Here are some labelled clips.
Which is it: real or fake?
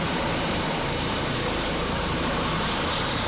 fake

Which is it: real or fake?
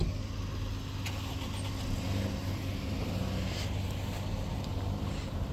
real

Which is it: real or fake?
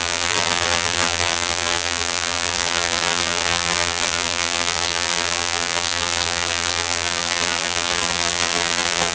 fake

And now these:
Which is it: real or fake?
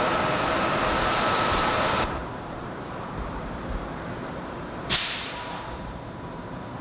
fake